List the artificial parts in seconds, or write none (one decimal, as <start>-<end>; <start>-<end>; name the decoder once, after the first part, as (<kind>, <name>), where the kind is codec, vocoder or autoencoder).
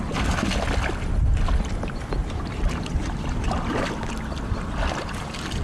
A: 2.2-3.5 (vocoder, BigVGAN v2)